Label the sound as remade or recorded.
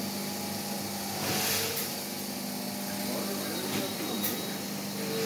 recorded